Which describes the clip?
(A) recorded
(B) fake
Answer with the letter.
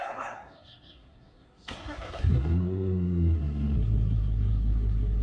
B